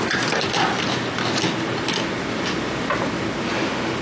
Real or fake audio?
real